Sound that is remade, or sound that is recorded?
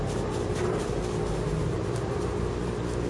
recorded